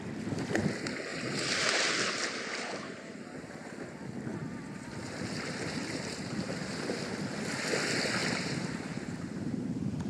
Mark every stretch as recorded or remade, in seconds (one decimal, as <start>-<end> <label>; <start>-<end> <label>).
0.0-1.1 recorded; 1.1-2.3 remade; 2.3-4.3 recorded; 4.3-6.7 remade; 6.7-8.2 recorded; 8.2-10.1 remade